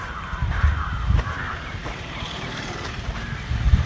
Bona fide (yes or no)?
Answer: no